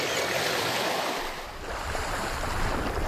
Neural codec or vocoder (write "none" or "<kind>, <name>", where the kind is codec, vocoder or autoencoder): none